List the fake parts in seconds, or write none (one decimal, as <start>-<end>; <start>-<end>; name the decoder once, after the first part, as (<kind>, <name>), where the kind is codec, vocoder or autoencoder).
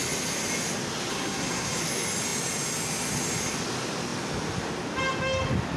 1.1-1.8 (codec, SNAC)